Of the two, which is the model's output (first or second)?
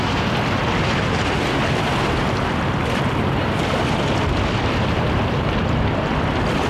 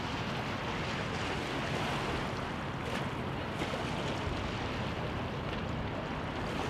first